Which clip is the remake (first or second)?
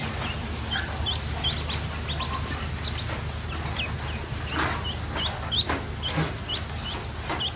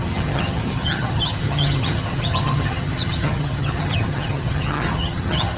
second